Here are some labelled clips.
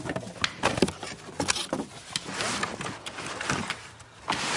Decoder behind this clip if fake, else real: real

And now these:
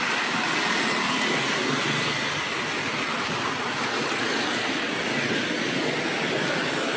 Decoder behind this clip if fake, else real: real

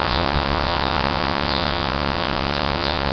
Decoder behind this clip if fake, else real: fake, vocoder, WaveNeXt